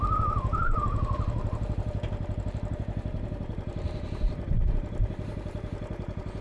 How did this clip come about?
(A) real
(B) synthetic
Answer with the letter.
B